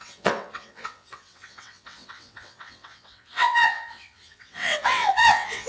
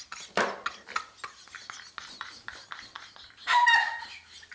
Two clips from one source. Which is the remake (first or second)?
first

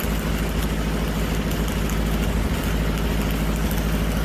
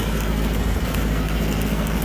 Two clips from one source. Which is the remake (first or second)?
second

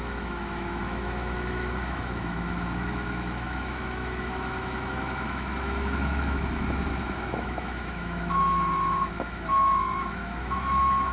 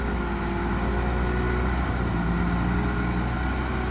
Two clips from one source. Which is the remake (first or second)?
first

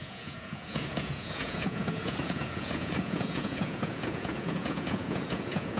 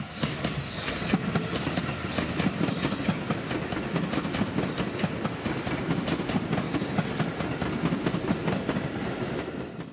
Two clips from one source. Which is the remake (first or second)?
first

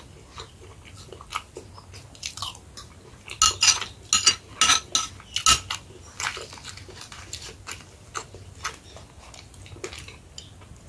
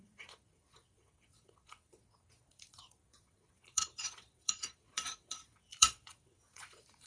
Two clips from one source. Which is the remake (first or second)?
second